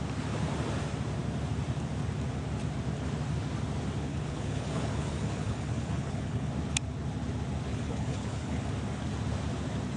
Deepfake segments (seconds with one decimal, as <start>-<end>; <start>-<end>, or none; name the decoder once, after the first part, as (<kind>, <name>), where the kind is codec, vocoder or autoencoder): 4.1-6.5 (codec, HILCodec); 7.7-8.7